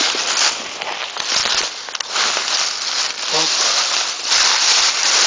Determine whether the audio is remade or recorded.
recorded